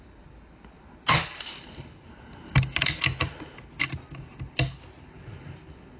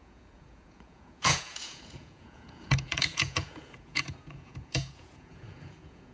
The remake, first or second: second